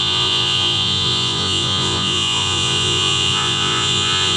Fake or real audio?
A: fake